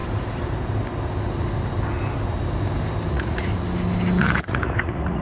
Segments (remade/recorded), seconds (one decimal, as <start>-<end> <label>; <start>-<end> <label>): 0.0-3.1 recorded; 3.1-3.5 remade; 3.5-4.2 recorded; 4.2-5.2 remade